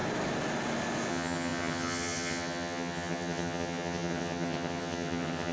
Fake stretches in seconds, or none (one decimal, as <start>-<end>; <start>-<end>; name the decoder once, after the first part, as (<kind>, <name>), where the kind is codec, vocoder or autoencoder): 1.1-5.5 (vocoder, HiFi-GAN)